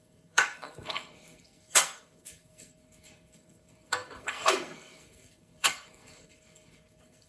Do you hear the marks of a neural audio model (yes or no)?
yes